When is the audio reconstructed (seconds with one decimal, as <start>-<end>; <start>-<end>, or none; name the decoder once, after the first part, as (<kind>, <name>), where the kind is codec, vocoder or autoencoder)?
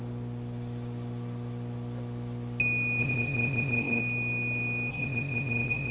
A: 3.0-4.0 (codec, SNAC); 4.9-5.9